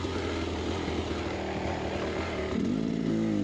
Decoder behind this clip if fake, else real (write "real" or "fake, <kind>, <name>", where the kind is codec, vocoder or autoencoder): real